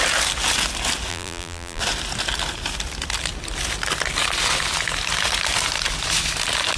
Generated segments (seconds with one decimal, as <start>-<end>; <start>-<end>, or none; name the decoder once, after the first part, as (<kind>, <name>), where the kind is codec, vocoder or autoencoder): 1.1-1.8 (vocoder, BigVGAN v2)